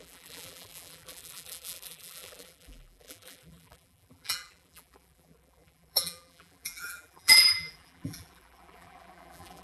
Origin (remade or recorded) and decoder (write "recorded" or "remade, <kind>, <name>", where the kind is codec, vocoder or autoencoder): remade, vocoder, BigVGAN v2